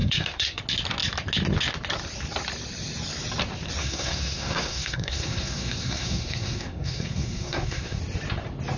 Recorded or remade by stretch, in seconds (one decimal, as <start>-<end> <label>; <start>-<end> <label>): 0.0-0.6 remade; 0.6-3.8 recorded; 3.8-8.0 remade; 8.0-8.8 recorded